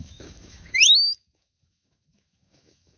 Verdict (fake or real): fake